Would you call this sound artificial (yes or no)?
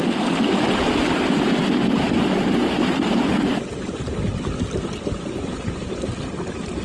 no